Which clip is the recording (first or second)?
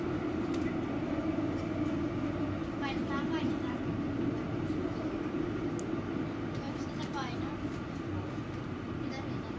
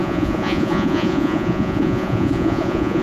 first